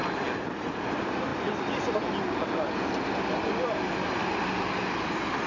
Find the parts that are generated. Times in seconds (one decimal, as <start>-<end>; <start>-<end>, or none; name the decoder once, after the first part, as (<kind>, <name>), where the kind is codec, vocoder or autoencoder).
none